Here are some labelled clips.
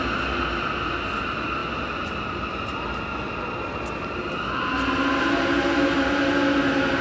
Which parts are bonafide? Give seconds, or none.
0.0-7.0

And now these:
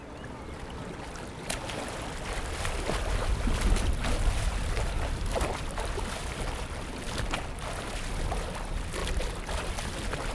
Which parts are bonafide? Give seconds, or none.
0.0-10.3

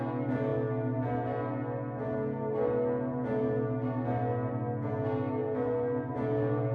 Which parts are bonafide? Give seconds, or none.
0.0-6.7

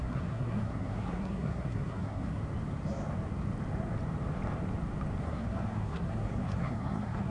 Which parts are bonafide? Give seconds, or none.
2.4-5.2

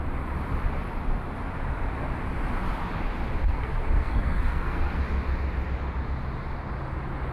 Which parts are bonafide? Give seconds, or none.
0.0-3.4; 5.0-7.3

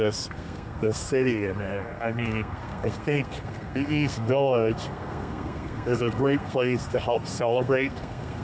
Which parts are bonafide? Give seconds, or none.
none